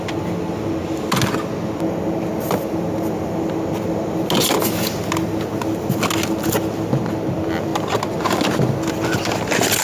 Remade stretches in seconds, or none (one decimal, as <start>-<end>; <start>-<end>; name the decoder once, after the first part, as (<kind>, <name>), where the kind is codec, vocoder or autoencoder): none